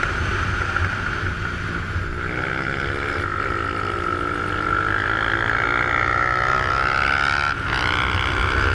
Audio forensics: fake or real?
real